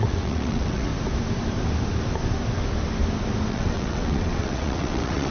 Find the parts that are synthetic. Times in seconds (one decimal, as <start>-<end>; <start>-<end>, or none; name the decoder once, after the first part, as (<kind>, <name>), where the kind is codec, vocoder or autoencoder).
0.0-0.9 (vocoder, WaveNeXt); 3.5-5.3